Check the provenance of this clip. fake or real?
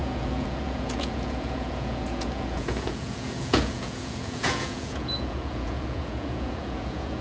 fake